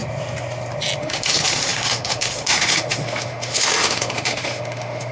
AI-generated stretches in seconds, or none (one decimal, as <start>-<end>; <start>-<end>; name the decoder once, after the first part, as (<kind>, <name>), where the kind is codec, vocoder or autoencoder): 1.0-5.1 (autoencoder, DAC-VAE)